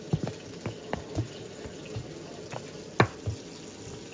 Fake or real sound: real